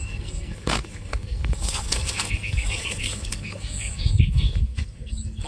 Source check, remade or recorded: remade